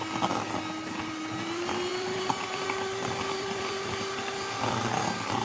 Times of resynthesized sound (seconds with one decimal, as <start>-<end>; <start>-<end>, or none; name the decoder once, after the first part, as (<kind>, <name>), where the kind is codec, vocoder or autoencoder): 1.9-4.1 (vocoder, BigVGAN v2)